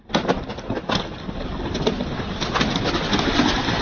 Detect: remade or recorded recorded